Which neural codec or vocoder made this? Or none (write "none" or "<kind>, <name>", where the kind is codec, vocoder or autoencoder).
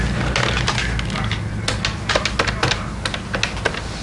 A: none